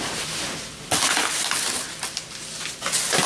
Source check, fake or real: real